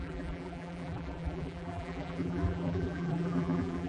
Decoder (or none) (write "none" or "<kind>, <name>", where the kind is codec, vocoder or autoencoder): vocoder, BigVGAN v2